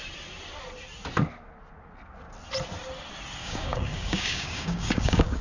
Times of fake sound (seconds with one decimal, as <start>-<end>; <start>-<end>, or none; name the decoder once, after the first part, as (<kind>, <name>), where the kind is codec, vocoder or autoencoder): 3.4-5.4 (codec, DAC)